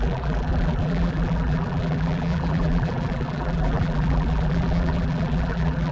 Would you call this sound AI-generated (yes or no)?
yes